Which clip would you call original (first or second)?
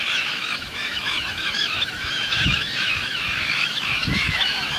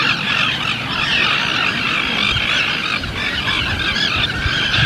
second